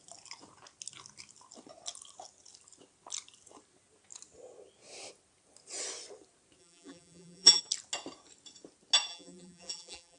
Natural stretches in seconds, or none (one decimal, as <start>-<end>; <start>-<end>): 0.0-6.6; 7.6-9.1